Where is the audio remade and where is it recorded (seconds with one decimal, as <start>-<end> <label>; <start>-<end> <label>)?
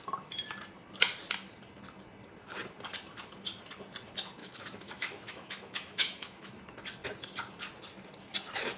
0.0-4.4 recorded; 4.4-6.6 remade; 6.6-8.8 recorded